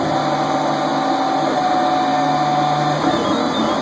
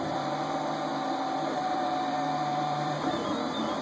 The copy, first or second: second